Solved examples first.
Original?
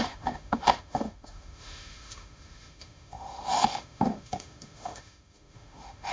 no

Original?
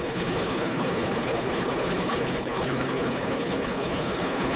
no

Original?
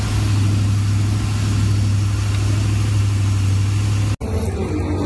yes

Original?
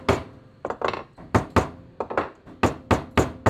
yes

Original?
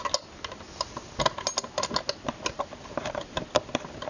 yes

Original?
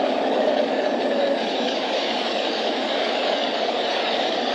no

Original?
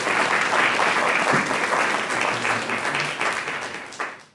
yes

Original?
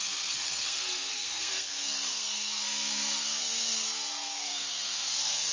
no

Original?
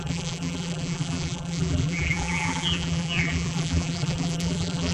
no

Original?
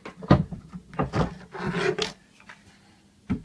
yes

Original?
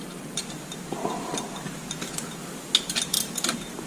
yes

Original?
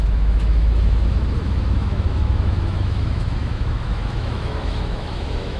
no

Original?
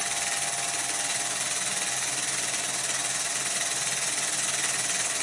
yes